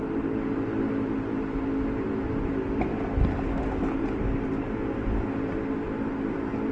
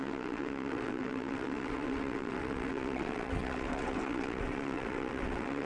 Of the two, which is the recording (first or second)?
first